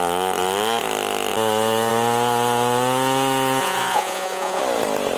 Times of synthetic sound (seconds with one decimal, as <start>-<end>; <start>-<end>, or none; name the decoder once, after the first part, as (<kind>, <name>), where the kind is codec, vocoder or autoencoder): 3.6-4.6 (vocoder, Vocos)